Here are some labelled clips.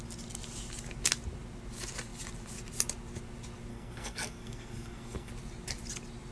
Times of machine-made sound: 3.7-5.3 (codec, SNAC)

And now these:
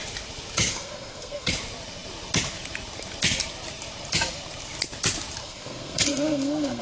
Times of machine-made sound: 0.7-1.5 (codec, SNAC); 5.4-6.8